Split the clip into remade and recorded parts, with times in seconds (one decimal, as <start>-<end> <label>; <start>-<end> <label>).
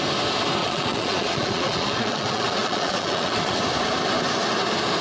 0.0-0.6 recorded; 0.6-3.6 remade; 3.6-5.0 recorded